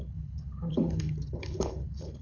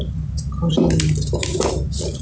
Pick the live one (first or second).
second